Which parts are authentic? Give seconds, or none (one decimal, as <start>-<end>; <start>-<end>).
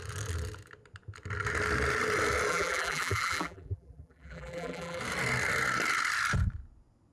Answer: 0.0-2.5; 5.0-7.1